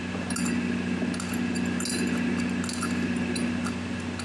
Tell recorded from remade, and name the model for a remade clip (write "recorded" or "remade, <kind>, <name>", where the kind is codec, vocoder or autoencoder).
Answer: recorded